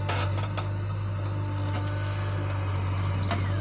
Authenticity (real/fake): real